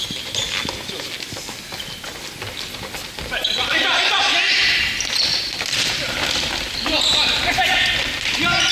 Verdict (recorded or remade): recorded